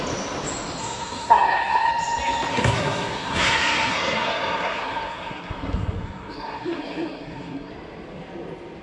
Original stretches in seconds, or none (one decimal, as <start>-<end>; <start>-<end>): 0.0-0.8; 1.9-2.5; 7.7-8.8